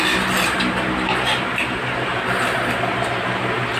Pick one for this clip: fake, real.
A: real